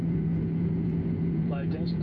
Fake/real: fake